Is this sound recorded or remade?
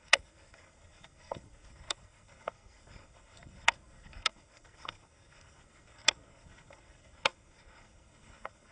remade